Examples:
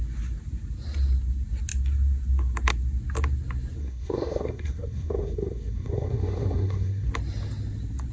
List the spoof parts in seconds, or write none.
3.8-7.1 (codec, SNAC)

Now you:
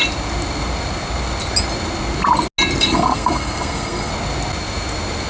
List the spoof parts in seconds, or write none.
2.8-4.1 (codec, SNAC)